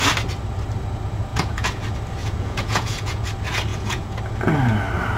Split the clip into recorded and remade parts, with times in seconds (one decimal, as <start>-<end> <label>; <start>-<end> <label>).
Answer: 0.0-1.3 recorded; 1.3-1.8 remade; 1.8-2.2 recorded; 2.2-3.3 remade; 3.3-3.7 recorded; 3.7-4.2 remade; 4.2-5.2 recorded